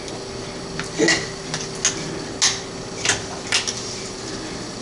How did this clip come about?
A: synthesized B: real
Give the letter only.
B